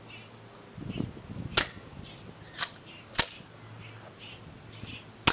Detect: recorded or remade recorded